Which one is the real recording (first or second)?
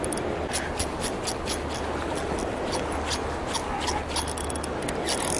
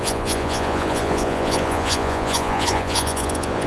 first